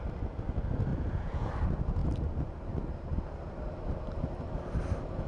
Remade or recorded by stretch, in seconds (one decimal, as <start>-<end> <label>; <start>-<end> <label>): 0.0-0.9 recorded; 0.9-1.5 remade; 1.5-5.3 recorded